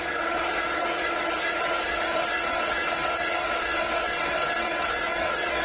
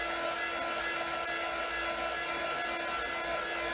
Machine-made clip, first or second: first